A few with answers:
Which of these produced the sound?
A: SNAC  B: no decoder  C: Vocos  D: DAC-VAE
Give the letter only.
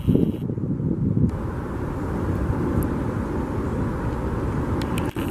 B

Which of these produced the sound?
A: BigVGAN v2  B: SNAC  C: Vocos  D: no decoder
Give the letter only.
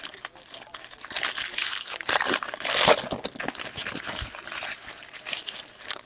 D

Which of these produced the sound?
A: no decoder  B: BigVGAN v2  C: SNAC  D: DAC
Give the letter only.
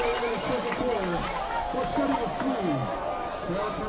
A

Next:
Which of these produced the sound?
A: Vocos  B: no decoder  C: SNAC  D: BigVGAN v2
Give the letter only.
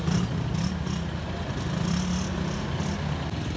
B